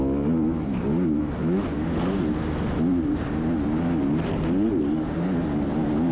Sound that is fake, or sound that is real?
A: real